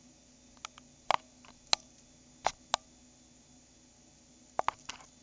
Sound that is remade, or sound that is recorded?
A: recorded